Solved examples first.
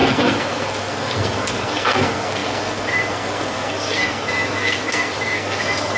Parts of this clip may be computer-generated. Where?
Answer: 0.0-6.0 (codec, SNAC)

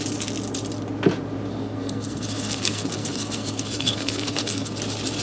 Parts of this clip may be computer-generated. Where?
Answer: 1.6-4.7 (codec, SNAC)

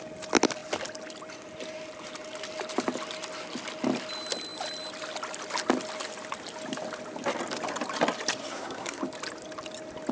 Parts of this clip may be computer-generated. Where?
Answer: 8.4-9.0 (codec, SNAC)

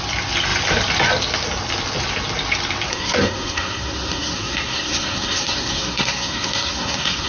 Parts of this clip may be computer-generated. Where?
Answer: 2.9-7.3 (codec, SNAC)

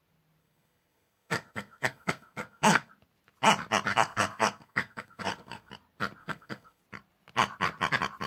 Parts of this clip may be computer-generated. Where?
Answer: 0.4-2.9 (codec, SNAC); 3.9-5.7; 6.2-6.8

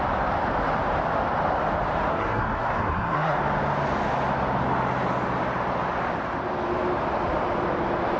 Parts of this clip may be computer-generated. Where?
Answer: 2.1-3.4 (codec, SNAC)

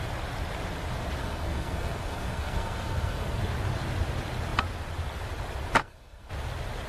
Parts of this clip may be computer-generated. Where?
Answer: 1.2-3.4 (codec, SNAC); 5.8-6.3